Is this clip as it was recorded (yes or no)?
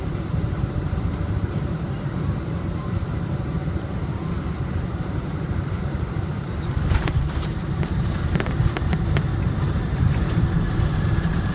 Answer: no